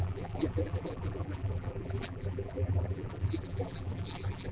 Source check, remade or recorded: remade